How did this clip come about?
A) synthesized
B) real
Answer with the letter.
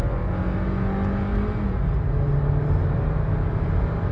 B